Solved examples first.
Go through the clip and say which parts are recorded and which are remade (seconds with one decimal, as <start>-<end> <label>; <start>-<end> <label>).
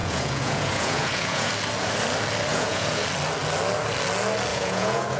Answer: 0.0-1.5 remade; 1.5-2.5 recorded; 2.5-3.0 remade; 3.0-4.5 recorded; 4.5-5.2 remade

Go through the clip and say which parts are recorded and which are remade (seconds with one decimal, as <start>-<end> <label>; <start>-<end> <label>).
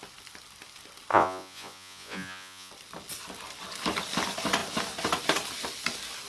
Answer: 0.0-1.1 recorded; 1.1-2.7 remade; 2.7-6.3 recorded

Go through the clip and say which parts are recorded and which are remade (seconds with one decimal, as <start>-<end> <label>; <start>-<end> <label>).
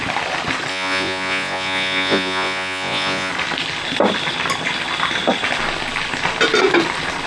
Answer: 0.0-0.7 recorded; 0.7-3.3 remade; 3.3-7.3 recorded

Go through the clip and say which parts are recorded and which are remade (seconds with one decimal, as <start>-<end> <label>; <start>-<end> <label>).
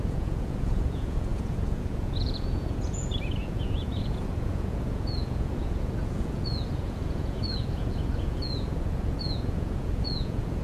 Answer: 0.0-10.6 remade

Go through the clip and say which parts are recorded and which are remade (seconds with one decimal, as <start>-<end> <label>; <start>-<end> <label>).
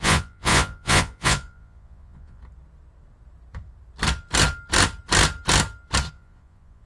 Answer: 0.0-2.4 remade; 2.4-6.1 recorded; 6.1-6.9 remade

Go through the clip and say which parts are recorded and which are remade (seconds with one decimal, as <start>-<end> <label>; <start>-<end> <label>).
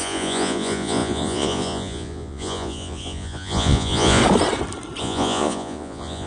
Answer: 0.0-4.2 remade; 4.2-5.0 recorded; 5.0-6.3 remade